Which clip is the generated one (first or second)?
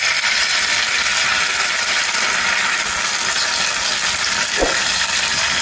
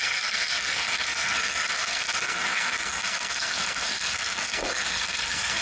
second